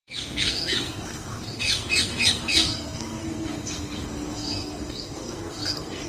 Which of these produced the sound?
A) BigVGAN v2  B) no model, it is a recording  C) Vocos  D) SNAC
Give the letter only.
D